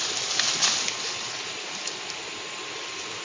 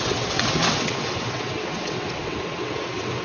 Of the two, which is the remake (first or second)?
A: second